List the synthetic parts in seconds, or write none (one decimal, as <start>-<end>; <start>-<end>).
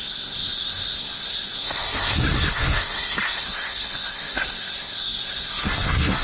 0.0-6.2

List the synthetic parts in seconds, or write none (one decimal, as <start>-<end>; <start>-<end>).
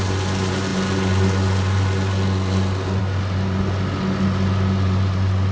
none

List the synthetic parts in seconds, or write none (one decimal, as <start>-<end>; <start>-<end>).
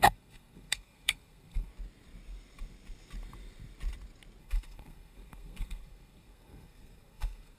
0.0-1.7; 4.4-7.6